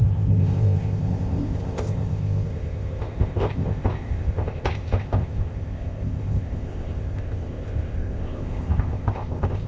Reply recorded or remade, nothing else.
remade